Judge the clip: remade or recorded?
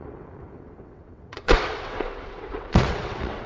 remade